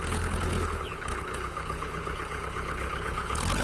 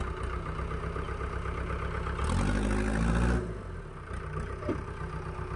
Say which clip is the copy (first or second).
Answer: first